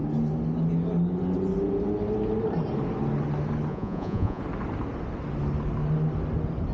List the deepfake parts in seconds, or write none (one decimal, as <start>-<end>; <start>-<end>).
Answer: 3.7-4.4